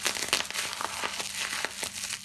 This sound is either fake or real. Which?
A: real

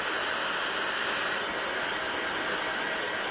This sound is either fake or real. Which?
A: real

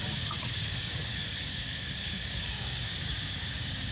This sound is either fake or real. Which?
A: fake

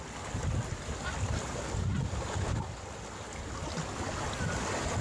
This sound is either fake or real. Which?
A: real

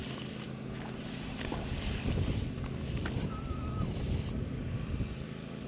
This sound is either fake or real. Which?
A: real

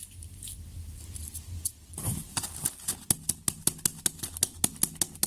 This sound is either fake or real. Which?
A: real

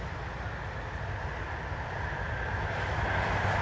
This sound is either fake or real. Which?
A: real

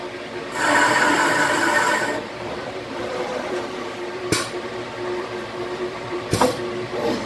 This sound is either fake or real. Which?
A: fake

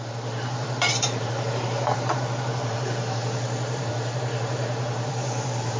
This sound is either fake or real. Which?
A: fake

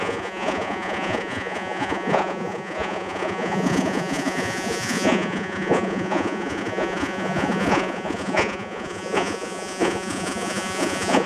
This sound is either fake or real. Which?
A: fake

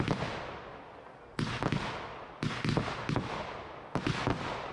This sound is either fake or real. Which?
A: real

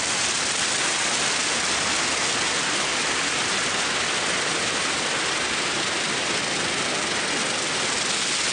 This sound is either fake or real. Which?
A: real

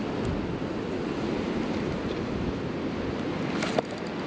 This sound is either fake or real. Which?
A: real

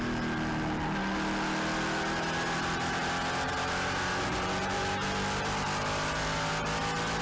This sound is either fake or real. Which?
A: real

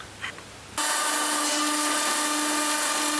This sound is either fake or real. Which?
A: real